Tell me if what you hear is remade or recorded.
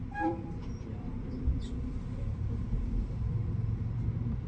remade